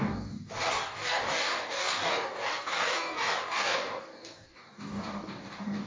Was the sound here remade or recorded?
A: remade